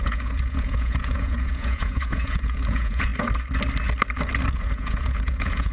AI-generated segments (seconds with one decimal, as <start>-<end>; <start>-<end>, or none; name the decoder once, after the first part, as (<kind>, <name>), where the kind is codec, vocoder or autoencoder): 0.0-3.1 (vocoder, Vocos); 4.5-5.7